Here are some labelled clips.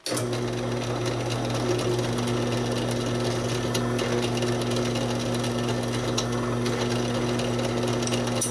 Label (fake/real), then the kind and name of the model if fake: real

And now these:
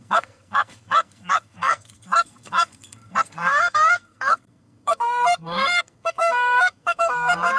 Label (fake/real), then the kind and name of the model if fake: fake, codec, SNAC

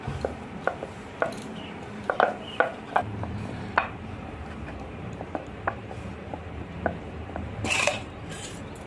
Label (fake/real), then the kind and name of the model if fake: fake, vocoder, BigVGAN v2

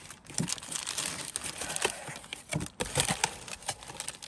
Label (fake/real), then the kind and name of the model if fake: real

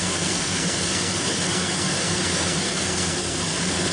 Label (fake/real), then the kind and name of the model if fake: fake, codec, SNAC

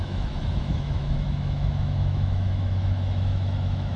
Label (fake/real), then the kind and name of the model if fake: fake, autoencoder, DAC-VAE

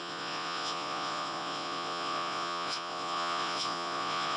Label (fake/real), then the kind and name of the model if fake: fake, vocoder, Vocos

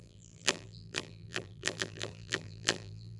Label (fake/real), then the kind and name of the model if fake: fake, vocoder, BigVGAN v2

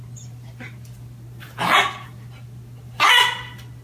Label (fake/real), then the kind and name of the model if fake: real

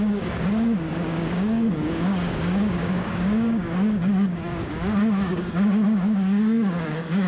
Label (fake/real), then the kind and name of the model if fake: fake, codec, DAC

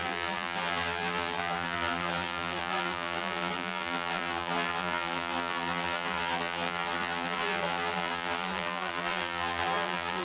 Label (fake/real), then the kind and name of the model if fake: fake, vocoder, BigVGAN v2